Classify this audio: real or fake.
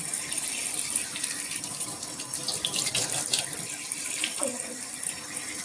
fake